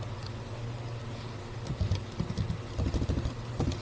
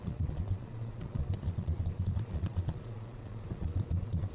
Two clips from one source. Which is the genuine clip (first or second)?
first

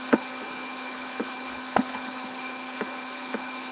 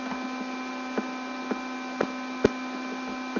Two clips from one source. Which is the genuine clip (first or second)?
second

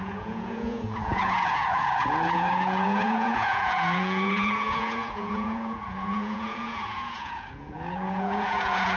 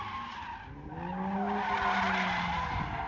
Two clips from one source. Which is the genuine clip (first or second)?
second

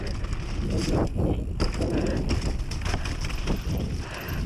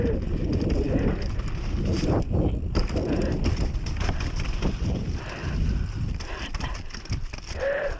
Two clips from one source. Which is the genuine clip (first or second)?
first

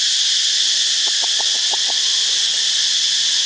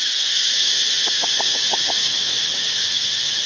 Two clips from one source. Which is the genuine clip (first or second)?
first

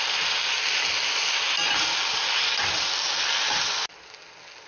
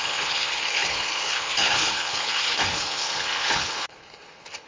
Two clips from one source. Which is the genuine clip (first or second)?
first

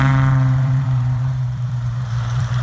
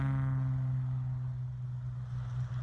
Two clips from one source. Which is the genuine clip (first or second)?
second